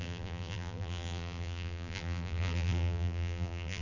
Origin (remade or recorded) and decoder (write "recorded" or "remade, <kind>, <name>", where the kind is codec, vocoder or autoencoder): remade, vocoder, BigVGAN v2